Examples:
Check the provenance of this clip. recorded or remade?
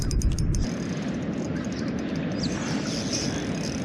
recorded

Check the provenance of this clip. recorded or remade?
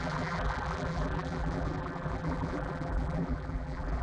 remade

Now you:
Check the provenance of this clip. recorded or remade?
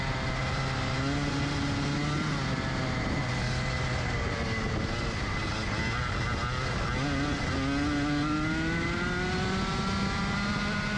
recorded